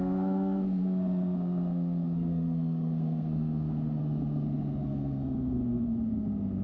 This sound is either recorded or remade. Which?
remade